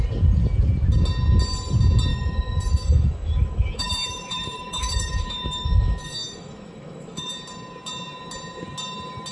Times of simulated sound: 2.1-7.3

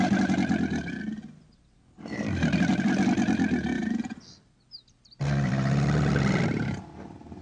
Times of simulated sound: none

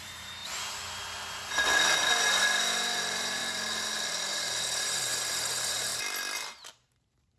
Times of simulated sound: 0.0-0.4; 2.1-3.4; 4.3-5.9; 6.7-7.4

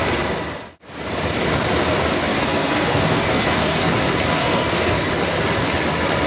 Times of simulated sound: 2.3-3.9; 4.4-5.1